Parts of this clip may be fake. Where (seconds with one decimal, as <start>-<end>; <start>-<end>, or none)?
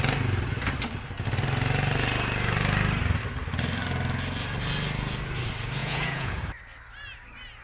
5.8-6.4